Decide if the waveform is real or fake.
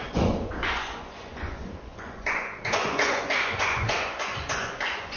fake